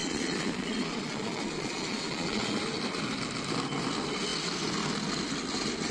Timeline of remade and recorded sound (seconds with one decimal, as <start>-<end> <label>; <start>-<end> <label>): 0.0-2.6 remade; 2.6-5.9 recorded